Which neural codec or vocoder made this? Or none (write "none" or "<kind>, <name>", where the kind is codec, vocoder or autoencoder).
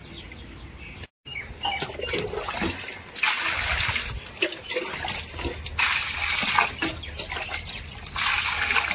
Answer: none